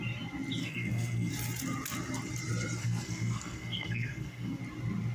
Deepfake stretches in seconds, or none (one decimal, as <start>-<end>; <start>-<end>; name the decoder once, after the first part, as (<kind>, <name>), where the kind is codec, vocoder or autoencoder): 0.6-1.3 (codec, SNAC); 2.8-4.6